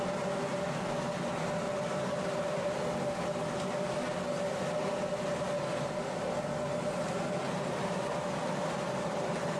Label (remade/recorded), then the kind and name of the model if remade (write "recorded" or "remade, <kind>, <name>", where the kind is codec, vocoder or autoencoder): recorded